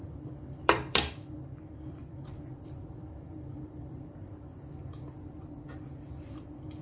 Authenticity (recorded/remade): remade